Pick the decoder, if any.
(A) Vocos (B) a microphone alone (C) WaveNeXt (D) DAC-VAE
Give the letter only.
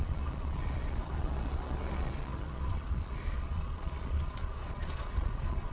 A